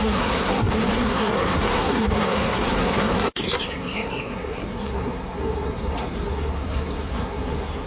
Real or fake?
fake